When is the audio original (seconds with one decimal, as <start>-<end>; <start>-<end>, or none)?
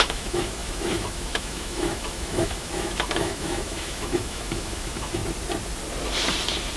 5.2-6.8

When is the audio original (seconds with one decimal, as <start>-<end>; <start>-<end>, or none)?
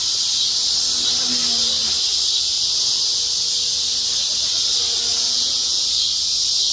0.0-5.1; 5.8-6.7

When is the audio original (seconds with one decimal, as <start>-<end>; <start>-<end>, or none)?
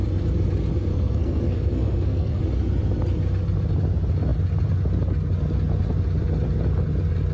0.0-0.9; 2.4-7.3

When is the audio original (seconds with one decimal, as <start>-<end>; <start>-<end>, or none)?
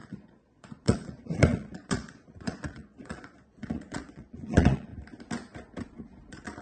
4.9-5.8